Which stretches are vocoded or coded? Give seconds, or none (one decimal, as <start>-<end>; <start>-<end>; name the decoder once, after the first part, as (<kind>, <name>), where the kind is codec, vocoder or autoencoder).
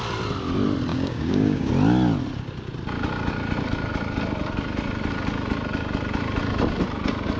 0.9-1.7 (codec, DAC)